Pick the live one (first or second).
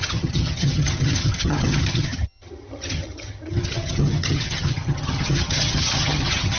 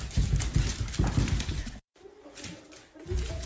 second